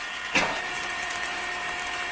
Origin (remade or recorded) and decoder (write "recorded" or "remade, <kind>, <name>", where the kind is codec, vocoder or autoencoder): recorded